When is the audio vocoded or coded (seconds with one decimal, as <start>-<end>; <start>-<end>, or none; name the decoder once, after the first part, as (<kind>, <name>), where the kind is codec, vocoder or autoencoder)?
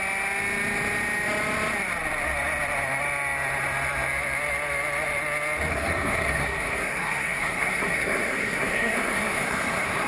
5.7-10.1 (codec, SNAC)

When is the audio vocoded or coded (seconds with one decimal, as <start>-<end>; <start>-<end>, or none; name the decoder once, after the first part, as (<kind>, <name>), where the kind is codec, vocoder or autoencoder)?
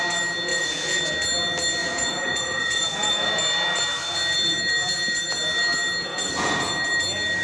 0.5-1.0 (vocoder, Vocos); 1.8-3.3; 6.1-6.7